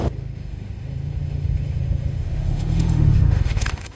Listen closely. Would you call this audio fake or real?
fake